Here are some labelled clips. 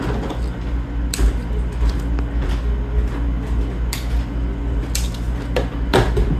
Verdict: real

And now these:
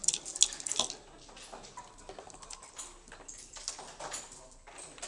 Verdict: real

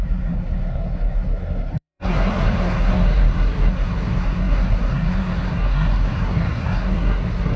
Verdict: fake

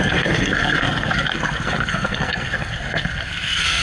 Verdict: fake